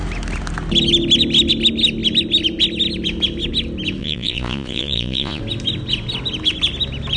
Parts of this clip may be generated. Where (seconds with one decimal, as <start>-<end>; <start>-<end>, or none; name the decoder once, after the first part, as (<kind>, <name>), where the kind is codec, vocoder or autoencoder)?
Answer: 4.0-5.4 (vocoder, Vocos)